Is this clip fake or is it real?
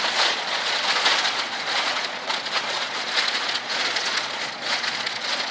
fake